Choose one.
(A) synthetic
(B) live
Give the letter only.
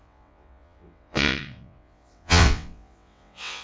A